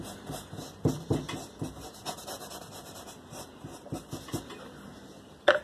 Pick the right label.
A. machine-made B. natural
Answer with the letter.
B